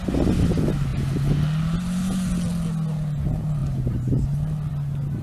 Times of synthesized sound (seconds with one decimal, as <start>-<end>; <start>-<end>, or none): none